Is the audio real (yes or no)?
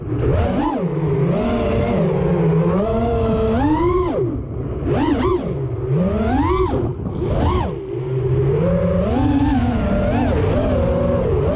yes